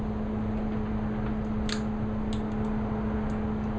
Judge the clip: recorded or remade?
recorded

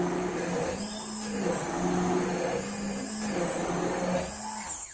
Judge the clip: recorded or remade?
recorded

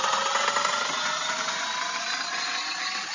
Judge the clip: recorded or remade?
recorded